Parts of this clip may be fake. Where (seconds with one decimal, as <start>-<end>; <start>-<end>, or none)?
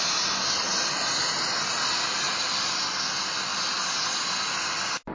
none